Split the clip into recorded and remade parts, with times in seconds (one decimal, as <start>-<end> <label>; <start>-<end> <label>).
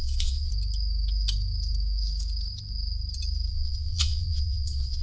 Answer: 0.0-0.5 remade; 0.5-3.5 recorded; 3.5-5.0 remade